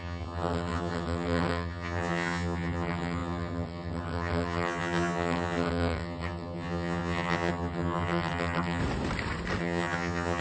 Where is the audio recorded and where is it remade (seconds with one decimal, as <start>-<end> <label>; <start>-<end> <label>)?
0.0-8.8 remade; 8.8-9.6 recorded; 9.6-10.4 remade